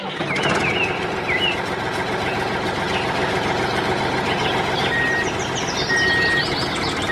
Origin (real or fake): real